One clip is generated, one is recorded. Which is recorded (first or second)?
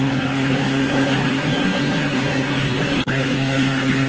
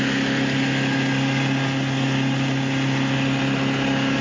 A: second